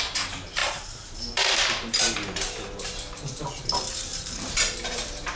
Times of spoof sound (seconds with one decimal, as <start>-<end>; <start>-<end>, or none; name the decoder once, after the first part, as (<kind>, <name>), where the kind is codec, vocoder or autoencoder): 0.0-5.4 (vocoder, BigVGAN v2)